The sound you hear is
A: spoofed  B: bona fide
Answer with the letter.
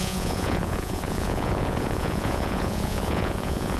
A